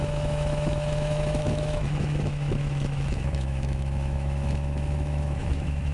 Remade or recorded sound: remade